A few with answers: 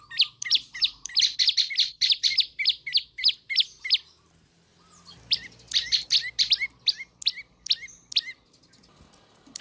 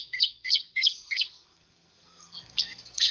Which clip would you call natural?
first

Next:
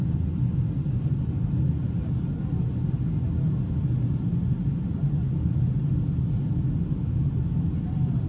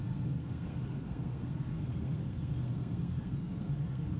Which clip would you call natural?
first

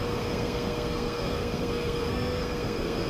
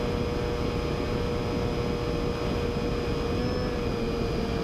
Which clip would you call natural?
second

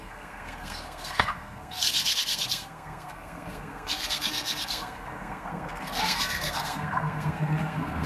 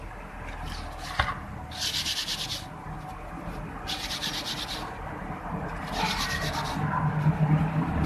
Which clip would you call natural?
second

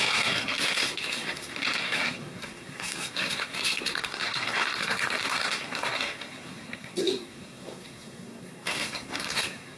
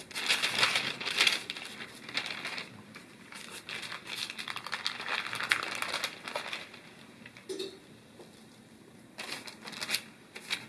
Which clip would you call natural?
second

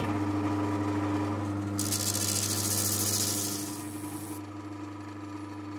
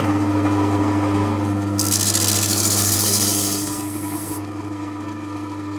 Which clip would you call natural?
first